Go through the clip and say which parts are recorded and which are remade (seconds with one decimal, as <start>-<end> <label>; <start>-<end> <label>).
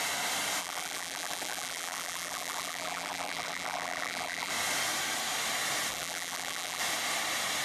0.0-0.6 recorded; 0.6-4.5 remade; 4.5-5.9 recorded; 5.9-6.8 remade; 6.8-7.6 recorded